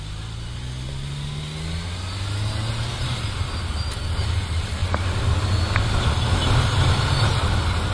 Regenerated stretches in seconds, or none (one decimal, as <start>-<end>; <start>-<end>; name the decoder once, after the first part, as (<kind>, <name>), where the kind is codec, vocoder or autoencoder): none